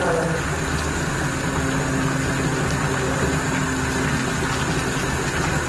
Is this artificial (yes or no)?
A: no